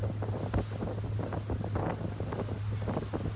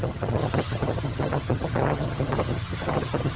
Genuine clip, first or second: first